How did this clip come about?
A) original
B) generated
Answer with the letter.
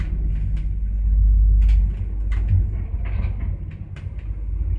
A